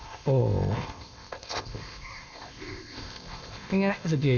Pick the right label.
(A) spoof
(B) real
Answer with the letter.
A